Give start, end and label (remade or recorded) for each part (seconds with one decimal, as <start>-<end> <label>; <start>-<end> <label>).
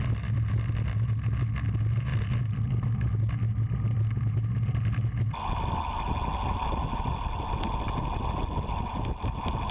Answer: 0.0-9.7 recorded